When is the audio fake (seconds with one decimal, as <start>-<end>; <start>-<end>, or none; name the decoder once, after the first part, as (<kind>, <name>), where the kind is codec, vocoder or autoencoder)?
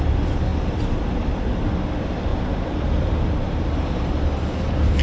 2.3-4.3 (vocoder, BigVGAN v2)